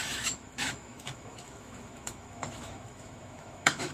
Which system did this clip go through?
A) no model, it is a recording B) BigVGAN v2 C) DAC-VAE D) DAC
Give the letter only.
C